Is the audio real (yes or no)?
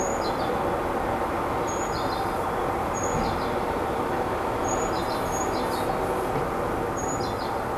yes